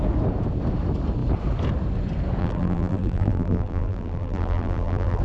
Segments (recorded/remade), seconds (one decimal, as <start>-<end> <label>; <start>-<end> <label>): 0.0-2.4 recorded; 2.4-5.2 remade